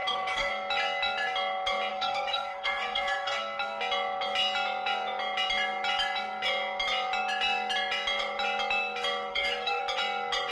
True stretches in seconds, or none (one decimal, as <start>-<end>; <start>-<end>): 0.5-1.9; 3.4-9.3; 9.8-10.5